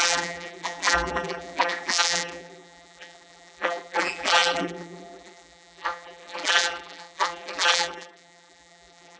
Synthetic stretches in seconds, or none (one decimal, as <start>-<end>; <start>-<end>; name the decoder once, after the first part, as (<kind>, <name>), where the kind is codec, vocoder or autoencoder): 0.0-9.2 (vocoder, BigVGAN v2)